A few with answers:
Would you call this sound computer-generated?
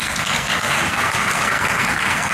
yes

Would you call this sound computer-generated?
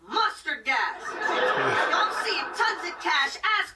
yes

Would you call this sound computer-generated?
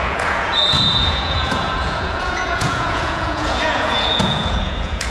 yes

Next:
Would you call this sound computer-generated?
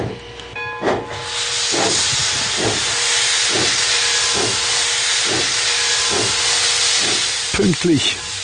no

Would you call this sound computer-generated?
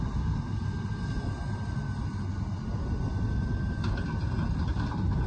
no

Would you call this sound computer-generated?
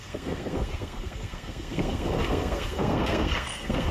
yes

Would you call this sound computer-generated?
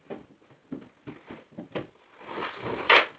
no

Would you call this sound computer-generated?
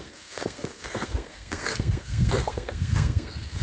yes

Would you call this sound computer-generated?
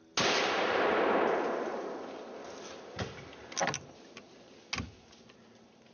no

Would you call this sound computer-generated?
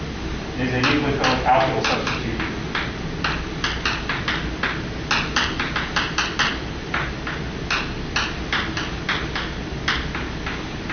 no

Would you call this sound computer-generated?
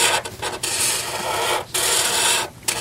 no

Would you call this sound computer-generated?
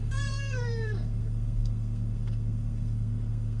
yes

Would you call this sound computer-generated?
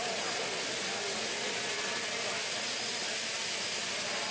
no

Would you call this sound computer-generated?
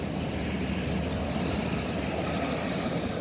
no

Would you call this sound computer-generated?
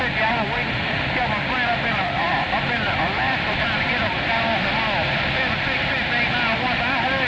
no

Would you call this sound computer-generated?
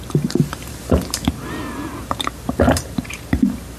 yes